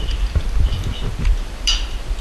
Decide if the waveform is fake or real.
fake